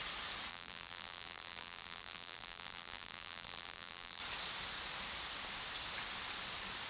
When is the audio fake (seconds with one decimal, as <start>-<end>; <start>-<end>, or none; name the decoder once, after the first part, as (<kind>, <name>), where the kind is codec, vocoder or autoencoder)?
0.5-4.2 (vocoder, BigVGAN v2)